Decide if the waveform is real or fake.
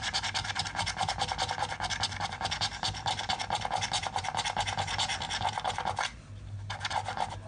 real